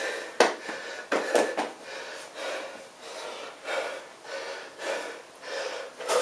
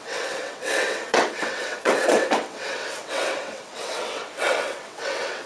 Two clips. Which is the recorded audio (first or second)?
first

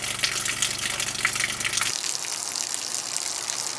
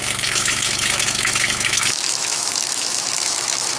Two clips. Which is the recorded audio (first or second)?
first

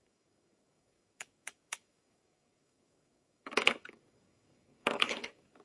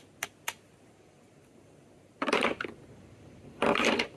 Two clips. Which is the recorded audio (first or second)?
second